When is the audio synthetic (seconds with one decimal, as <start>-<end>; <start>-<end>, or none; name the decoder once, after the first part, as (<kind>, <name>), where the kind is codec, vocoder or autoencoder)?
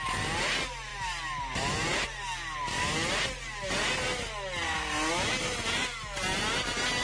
none